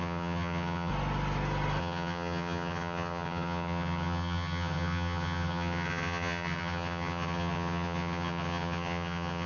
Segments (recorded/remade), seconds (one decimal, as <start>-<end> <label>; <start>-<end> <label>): 0.0-0.9 remade; 0.9-1.8 recorded; 1.8-9.5 remade